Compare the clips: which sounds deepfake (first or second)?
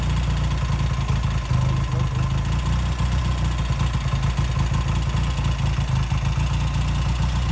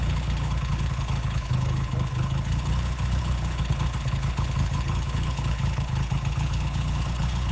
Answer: second